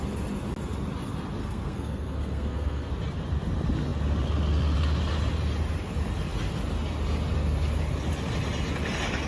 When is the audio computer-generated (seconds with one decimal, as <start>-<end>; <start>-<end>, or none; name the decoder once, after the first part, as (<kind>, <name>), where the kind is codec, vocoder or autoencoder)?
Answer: 1.4-2.9 (codec, SNAC)